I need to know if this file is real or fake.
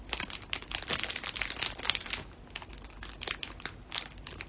real